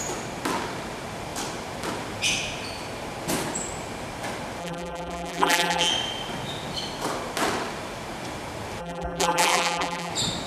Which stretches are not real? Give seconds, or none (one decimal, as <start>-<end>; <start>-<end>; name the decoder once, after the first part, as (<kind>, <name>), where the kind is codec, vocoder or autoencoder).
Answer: 4.6-5.9 (vocoder, BigVGAN v2); 8.8-10.1